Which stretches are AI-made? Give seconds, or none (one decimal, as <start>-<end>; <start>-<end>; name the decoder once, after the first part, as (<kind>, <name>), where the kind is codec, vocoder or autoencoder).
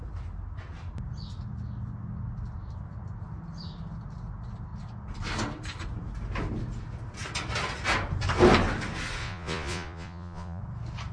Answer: 9.2-10.6 (vocoder, Vocos)